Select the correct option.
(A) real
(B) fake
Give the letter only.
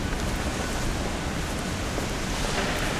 A